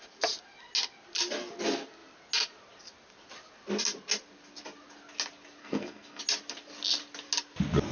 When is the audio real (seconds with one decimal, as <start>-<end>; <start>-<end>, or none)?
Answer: 0.0-5.6; 6.2-7.9